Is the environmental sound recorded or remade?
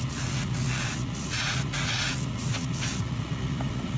remade